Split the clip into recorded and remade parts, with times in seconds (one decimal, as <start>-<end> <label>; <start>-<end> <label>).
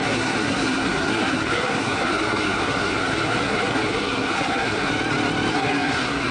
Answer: 0.0-4.9 remade; 4.9-5.5 recorded; 5.5-6.3 remade